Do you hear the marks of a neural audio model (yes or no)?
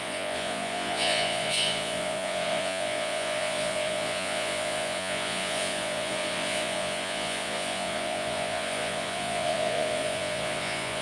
yes